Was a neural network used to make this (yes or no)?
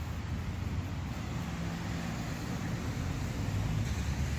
no